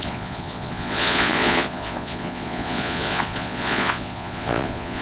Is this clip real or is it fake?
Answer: fake